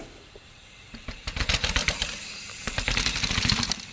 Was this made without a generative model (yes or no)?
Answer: no